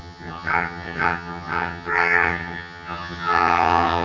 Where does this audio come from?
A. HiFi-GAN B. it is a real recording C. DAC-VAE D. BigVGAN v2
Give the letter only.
A